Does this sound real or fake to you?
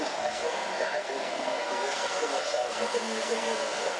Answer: fake